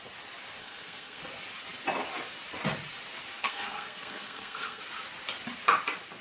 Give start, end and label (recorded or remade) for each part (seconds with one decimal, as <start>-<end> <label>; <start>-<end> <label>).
0.0-0.6 recorded; 0.6-1.2 remade; 1.2-3.4 recorded; 3.4-4.8 remade; 4.8-6.2 recorded